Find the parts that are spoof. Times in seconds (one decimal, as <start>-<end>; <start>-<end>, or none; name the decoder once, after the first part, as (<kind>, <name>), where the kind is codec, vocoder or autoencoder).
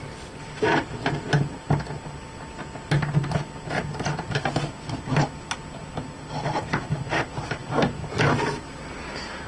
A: none